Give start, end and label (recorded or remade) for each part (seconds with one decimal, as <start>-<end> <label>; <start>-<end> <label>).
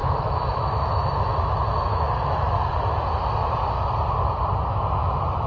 0.0-2.7 remade; 2.7-5.5 recorded